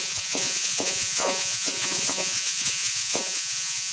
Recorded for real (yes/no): no